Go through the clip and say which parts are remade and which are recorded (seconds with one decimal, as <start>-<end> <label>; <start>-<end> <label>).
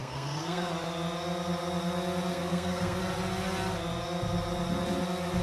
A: 0.0-0.7 remade; 0.7-2.3 recorded; 2.3-3.0 remade; 3.0-5.4 recorded